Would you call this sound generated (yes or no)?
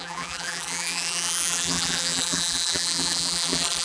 yes